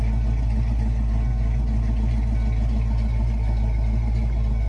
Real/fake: real